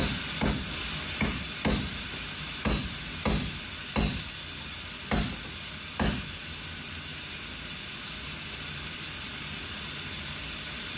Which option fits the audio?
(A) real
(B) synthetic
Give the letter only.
A